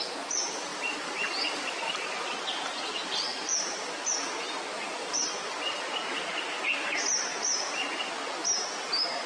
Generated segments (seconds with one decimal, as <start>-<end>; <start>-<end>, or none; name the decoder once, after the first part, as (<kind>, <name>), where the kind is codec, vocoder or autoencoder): 0.7-2.6 (vocoder, BigVGAN v2); 3.3-4.3

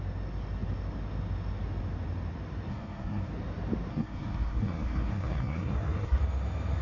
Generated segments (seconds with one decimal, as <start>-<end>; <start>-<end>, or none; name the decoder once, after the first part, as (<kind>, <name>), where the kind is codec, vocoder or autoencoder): 2.7-3.3 (codec, SNAC); 3.9-6.2

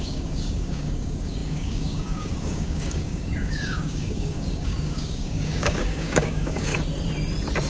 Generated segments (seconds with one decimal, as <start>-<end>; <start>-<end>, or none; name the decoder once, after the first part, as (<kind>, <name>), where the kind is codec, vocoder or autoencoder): 0.0-6.7 (codec, DAC)

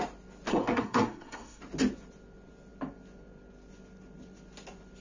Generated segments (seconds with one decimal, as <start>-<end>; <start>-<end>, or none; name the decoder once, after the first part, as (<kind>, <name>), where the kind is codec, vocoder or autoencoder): 0.5-1.6 (codec, SNAC)

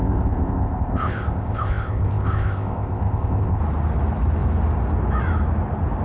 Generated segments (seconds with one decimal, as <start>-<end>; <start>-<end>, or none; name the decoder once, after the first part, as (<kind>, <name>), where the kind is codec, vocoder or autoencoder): 0.0-3.6 (codec, ZipCodec)

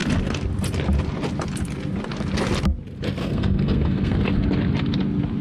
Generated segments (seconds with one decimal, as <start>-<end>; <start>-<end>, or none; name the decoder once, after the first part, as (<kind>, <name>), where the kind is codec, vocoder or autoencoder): 3.2-4.2 (codec, SNAC)